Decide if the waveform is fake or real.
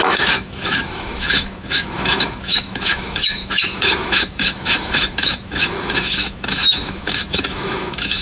fake